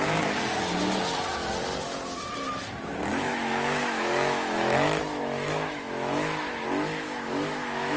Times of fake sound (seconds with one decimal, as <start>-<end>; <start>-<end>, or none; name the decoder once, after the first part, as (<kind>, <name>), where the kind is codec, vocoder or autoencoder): 3.1-8.0 (autoencoder, DAC-VAE)